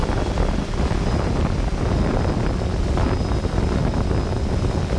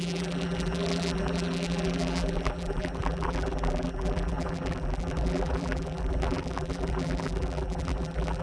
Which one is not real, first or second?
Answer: second